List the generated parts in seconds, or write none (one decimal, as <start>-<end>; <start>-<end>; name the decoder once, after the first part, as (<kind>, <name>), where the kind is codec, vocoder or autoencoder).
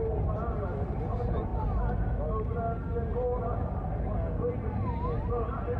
none